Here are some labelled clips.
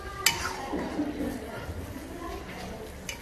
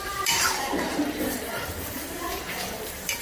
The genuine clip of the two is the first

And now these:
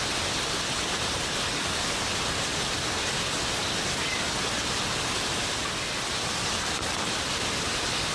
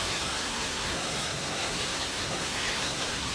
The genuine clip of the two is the first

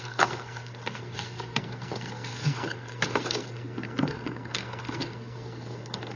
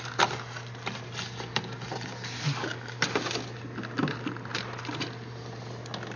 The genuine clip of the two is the second